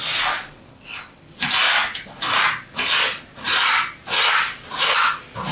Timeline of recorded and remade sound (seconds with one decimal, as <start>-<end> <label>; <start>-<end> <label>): 0.0-5.5 recorded